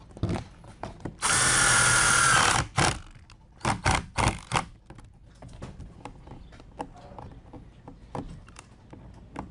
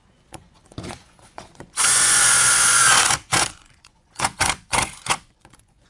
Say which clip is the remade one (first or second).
second